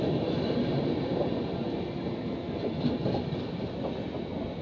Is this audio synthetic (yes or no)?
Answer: no